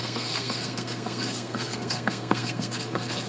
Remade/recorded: remade